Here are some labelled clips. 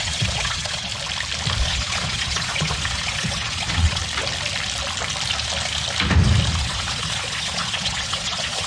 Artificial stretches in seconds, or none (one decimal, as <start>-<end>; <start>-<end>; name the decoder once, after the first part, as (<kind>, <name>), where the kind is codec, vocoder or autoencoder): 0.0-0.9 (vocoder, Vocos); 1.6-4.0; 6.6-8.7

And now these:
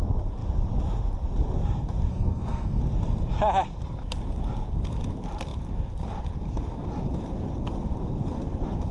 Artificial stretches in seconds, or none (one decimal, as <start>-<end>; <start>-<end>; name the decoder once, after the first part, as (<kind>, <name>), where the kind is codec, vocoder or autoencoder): 2.1-2.8 (codec, SNAC)

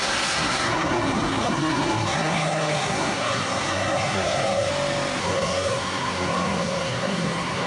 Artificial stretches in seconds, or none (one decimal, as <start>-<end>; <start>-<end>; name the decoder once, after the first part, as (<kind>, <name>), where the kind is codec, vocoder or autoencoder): 0.0-4.7 (codec, SNAC); 5.2-7.7

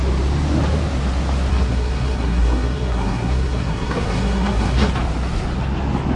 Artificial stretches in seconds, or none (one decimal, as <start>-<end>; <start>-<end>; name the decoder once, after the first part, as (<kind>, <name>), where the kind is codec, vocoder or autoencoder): 1.5-4.9 (codec, SNAC)

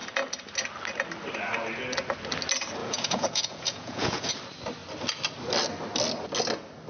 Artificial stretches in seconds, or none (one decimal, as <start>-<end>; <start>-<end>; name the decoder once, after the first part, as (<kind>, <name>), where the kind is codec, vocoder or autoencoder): 2.8-4.3 (vocoder, Vocos)

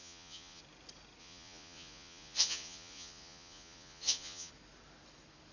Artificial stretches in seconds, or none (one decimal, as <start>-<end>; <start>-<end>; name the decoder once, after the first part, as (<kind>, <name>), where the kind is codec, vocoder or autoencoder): 0.0-0.6 (vocoder, Vocos); 1.2-4.5

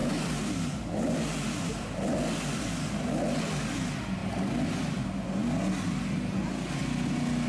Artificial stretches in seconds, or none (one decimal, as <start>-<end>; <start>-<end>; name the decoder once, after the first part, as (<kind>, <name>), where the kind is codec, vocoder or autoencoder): none